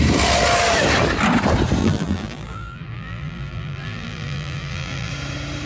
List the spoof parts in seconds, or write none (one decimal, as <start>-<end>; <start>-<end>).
1.8-5.1